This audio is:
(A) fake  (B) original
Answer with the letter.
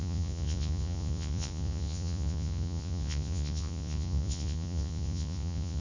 A